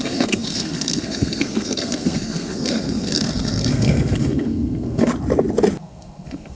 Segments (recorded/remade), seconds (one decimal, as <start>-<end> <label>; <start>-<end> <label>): 0.0-5.1 remade; 5.1-5.8 recorded; 5.8-6.6 remade

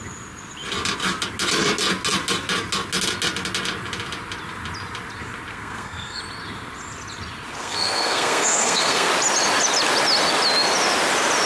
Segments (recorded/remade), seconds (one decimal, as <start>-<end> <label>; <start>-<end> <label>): 0.0-5.5 recorded; 5.5-6.2 remade; 6.2-7.6 recorded; 7.6-9.1 remade; 9.1-11.5 recorded

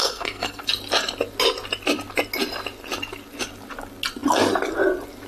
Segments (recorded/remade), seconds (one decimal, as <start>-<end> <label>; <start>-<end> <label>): 0.0-0.6 remade; 0.6-5.3 recorded